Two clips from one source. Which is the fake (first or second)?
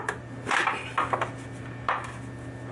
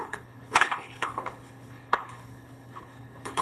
second